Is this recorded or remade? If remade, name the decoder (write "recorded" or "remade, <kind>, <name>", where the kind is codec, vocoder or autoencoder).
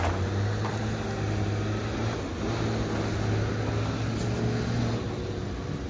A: recorded